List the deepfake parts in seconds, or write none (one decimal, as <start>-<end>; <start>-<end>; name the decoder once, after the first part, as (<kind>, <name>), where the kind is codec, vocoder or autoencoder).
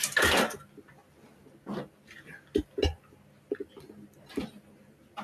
none